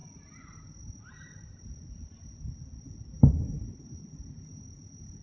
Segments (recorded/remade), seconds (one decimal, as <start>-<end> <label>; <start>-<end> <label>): 0.0-1.5 recorded; 1.5-4.6 remade; 4.6-5.2 recorded